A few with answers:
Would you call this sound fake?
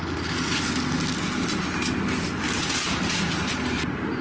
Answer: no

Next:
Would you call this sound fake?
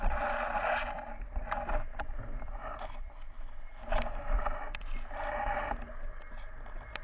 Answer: no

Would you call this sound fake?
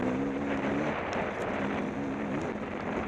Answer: no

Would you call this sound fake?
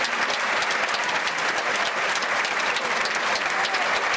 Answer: no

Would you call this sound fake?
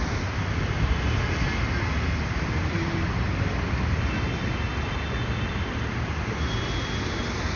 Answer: no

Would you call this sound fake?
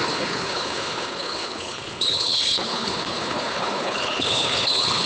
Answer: yes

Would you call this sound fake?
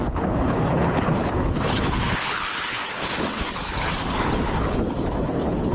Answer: yes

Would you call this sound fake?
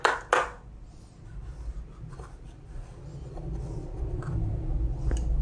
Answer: no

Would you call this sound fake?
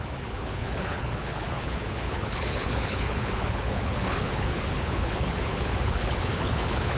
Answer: yes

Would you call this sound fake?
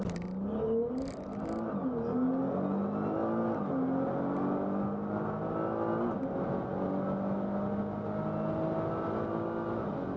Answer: no